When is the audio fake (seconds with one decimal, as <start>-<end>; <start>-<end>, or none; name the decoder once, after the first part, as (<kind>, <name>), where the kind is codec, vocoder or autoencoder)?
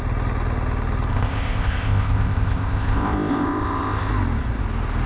1.1-4.1 (codec, ZipCodec)